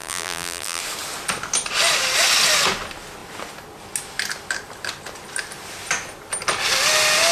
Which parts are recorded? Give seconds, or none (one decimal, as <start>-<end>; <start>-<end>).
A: 0.8-7.3